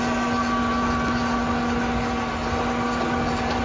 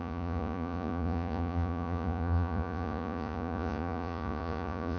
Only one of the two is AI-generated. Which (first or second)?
second